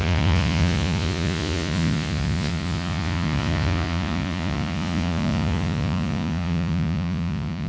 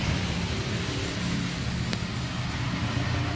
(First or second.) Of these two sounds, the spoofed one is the first